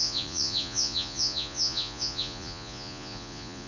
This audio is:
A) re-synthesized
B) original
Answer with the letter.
A